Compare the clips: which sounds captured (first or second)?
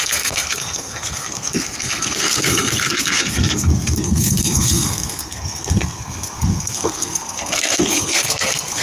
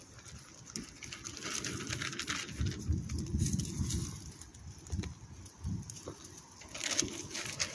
second